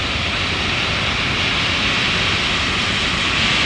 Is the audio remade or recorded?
recorded